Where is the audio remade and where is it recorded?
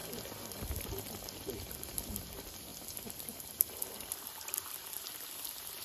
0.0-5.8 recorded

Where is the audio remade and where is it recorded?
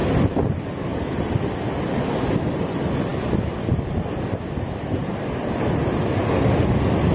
0.0-7.1 recorded